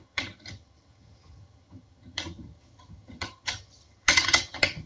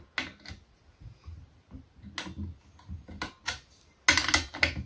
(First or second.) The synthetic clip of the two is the first